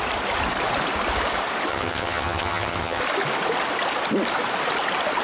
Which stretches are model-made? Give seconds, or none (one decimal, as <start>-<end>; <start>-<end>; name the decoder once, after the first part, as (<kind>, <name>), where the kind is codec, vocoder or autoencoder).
1.7-3.0 (vocoder, HiFi-GAN)